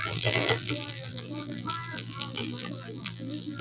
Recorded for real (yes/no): no